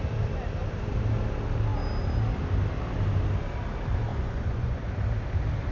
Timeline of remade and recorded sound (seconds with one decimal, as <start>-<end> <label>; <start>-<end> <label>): 0.0-4.1 recorded; 4.1-4.8 remade; 4.8-5.7 recorded